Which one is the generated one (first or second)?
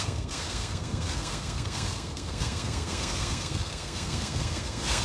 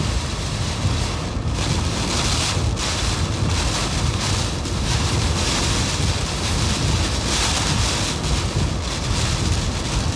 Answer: first